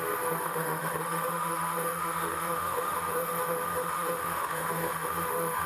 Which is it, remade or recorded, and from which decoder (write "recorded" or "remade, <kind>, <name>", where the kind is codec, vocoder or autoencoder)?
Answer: remade, autoencoder, DAC-VAE